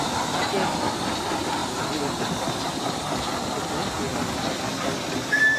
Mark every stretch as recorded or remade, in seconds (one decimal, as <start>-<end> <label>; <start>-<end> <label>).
0.0-5.6 recorded